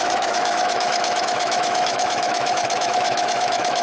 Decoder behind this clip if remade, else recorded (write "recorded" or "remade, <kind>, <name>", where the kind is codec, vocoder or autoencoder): remade, autoencoder, DAC-VAE